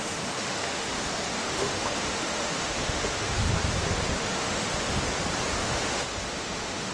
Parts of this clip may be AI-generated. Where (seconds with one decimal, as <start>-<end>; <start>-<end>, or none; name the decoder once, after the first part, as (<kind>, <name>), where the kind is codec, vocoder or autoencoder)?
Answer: 0.0-1.0 (autoencoder, DAC-VAE); 1.4-3.5; 4.2-5.0; 5.6-6.9